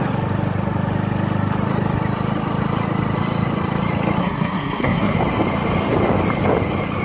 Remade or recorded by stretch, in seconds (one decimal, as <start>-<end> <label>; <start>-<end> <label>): 0.0-4.2 recorded; 4.2-5.2 remade; 5.2-7.0 recorded